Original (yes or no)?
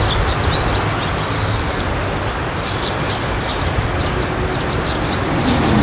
yes